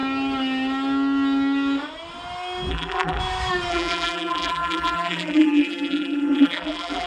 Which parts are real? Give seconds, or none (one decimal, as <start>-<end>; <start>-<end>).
0.0-2.7; 3.2-3.7